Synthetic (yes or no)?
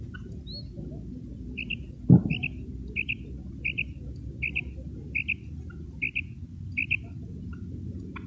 no